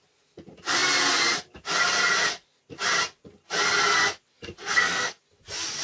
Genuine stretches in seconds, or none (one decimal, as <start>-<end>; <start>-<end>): 0.0-4.6; 5.2-5.8